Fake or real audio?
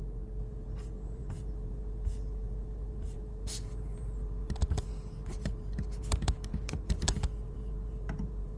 fake